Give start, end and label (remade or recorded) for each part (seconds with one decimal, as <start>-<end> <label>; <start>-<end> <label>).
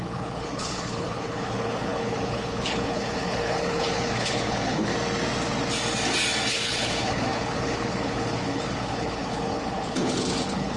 0.0-4.9 remade; 4.9-6.5 recorded; 6.5-10.8 remade